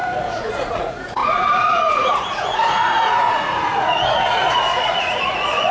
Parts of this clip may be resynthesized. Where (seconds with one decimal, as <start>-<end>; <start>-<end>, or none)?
0.0-5.7